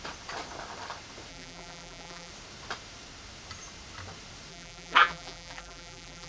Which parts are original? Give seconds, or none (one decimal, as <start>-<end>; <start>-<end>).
0.0-1.3; 2.3-4.5